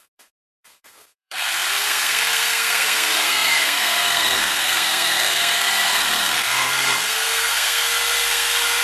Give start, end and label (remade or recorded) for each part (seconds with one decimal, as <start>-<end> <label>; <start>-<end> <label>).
0.0-8.8 remade